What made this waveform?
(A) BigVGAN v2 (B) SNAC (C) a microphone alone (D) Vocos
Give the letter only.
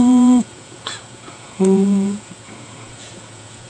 D